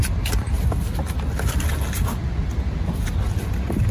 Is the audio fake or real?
real